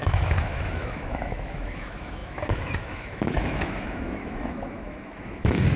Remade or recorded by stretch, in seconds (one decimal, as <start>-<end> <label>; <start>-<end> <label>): 0.0-5.8 remade